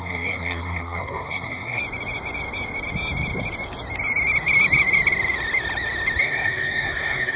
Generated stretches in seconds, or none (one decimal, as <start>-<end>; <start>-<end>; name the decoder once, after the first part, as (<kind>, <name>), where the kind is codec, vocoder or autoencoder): 0.0-1.8 (codec, SNAC); 6.2-7.4